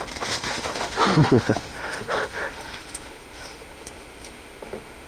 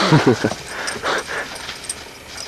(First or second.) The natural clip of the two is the second